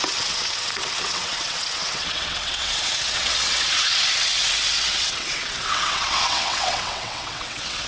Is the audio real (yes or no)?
no